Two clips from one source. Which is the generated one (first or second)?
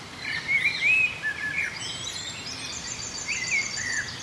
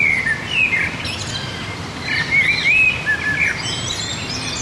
first